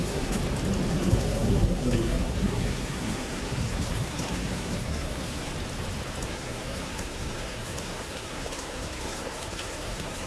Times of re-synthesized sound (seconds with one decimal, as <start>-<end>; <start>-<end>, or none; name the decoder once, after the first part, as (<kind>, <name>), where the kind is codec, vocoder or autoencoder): 0.0-0.4 (codec, SNAC); 0.9-5.5; 6.3-10.3